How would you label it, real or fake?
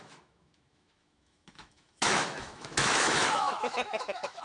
fake